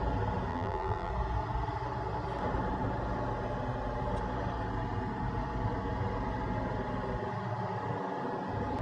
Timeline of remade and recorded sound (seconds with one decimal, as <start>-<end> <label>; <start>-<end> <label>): 0.0-0.5 recorded; 0.5-1.1 remade; 1.1-8.8 recorded